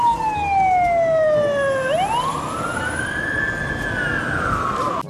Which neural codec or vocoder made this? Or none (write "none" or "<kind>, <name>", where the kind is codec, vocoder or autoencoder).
none